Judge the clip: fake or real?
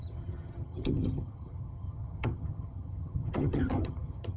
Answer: fake